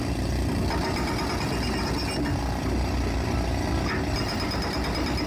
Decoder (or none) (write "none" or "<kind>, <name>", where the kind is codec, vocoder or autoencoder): none